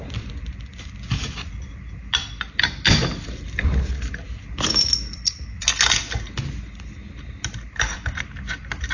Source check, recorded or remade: recorded